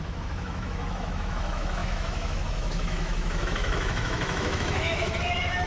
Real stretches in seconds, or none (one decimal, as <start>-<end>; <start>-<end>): none